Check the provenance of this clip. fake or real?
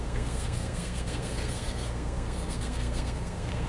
fake